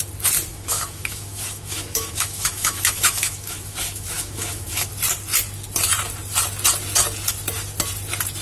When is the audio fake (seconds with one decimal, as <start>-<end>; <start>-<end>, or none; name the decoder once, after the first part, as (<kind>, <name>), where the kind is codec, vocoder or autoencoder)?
0.5-4.9 (autoencoder, DAC-VAE)